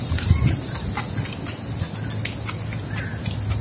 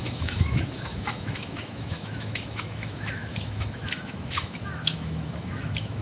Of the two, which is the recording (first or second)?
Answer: first